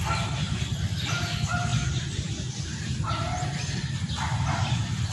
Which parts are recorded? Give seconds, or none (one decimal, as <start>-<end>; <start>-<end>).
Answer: 0.0-5.1